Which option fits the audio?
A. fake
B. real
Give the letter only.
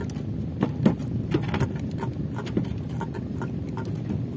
B